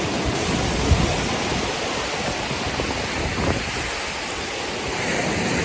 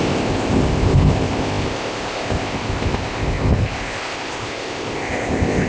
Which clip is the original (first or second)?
first